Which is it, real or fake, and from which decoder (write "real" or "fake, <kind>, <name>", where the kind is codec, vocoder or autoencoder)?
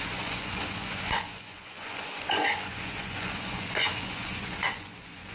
fake, vocoder, Vocos